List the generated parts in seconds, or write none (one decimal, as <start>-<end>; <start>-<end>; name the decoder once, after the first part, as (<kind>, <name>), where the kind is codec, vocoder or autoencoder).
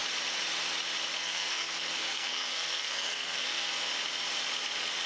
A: 1.2-3.9 (codec, SNAC)